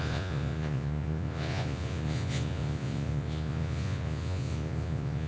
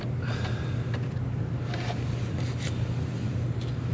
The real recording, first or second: second